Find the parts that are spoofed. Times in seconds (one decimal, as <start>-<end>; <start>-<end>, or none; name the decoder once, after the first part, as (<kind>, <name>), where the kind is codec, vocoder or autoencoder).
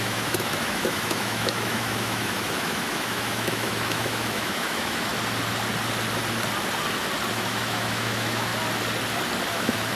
0.0-5.1 (autoencoder, DAC-VAE); 7.3-8.5; 9.5-10.0